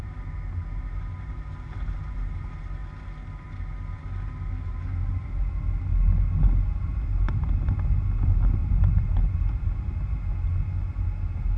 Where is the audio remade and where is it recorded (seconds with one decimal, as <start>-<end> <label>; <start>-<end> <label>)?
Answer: 0.0-8.6 recorded; 8.6-9.7 remade; 9.7-11.6 recorded